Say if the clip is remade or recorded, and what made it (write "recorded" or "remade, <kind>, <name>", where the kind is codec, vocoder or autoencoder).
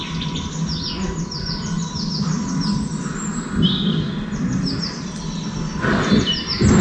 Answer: recorded